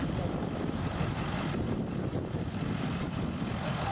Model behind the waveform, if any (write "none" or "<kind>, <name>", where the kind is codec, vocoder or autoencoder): none